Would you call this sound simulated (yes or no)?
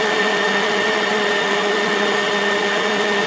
yes